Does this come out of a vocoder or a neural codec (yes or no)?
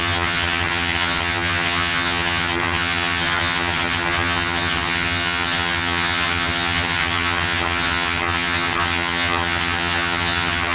yes